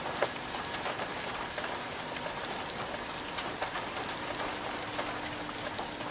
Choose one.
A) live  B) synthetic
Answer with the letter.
A